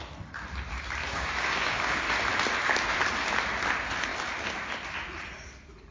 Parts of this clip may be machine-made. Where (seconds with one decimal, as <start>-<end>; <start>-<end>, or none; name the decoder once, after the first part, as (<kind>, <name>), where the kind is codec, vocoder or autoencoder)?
1.0-2.0 (codec, DAC)